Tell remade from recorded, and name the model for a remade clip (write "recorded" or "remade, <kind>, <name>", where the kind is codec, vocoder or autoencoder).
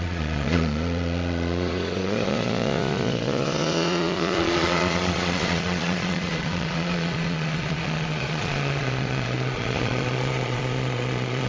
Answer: remade, vocoder, Vocos